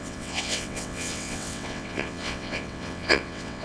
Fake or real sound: fake